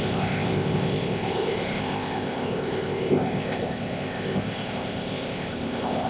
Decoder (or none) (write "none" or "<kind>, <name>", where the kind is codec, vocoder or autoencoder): codec, ZipCodec